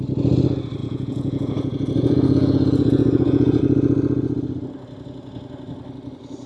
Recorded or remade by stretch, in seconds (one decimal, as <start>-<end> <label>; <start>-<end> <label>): 0.0-0.8 recorded; 0.8-3.6 remade; 3.6-6.5 recorded